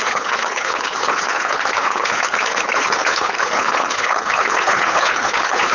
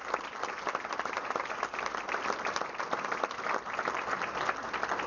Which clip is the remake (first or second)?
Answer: first